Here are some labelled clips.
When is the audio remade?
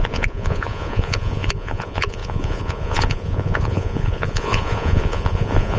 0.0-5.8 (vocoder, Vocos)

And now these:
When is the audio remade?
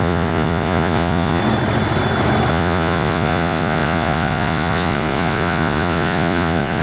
0.0-1.4 (vocoder, Vocos); 2.5-6.8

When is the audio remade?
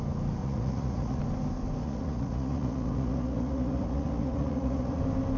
0.4-1.2 (vocoder, Vocos); 1.8-5.0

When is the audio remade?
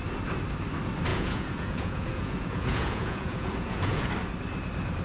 1.1-4.1 (vocoder, Vocos)